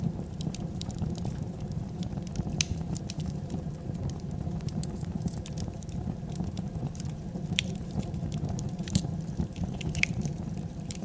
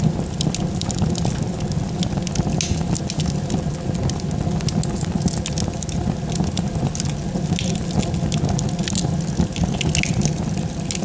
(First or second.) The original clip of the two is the second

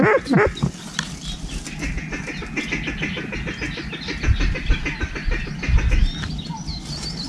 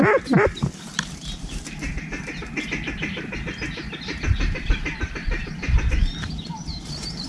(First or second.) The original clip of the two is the first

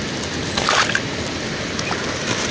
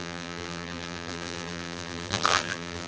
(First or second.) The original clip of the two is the first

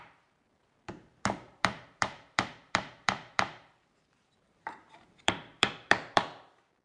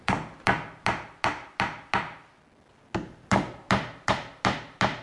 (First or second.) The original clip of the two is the second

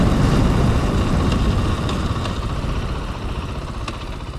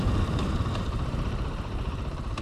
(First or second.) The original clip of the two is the first